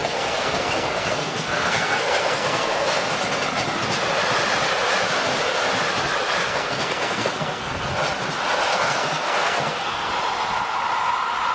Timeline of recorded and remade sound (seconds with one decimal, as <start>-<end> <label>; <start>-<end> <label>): 0.0-3.1 remade; 3.1-6.4 recorded; 6.4-7.9 remade; 7.9-8.7 recorded; 8.7-10.1 remade; 10.1-11.5 recorded